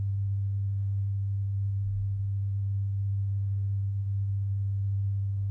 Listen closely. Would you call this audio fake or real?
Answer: fake